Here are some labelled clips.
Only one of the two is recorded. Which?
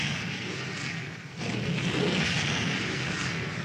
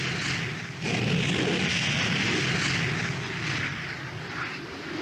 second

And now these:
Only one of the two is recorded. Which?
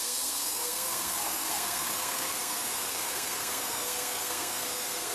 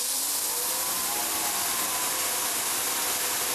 second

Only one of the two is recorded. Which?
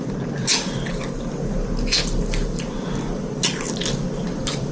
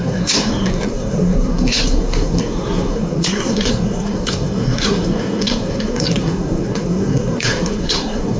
first